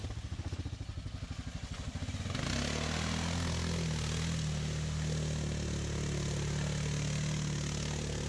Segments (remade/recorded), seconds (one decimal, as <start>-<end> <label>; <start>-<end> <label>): 0.0-8.3 recorded